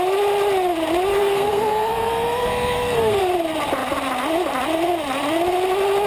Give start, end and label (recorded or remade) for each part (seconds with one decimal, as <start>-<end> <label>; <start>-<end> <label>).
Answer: 0.0-1.1 recorded; 1.1-3.2 remade; 3.2-6.1 recorded